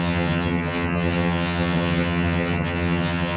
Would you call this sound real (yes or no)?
no